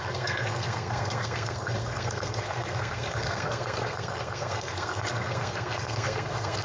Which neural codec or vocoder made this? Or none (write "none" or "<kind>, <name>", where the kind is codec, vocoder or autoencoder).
codec, SNAC